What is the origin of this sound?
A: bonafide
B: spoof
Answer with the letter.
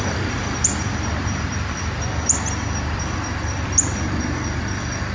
A